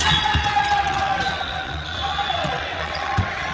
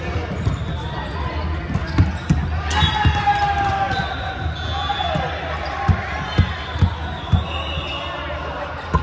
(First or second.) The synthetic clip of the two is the first